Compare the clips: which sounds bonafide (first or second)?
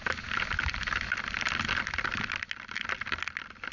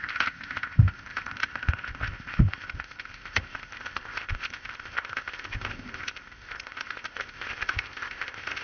first